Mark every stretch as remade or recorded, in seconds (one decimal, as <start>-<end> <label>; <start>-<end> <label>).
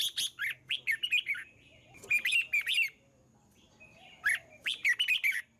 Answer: 0.0-2.1 recorded; 2.1-5.6 remade